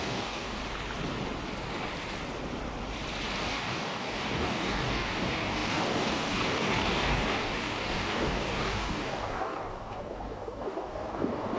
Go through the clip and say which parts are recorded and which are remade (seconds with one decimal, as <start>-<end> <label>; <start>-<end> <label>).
0.0-0.6 remade; 0.6-3.4 recorded; 3.4-11.6 remade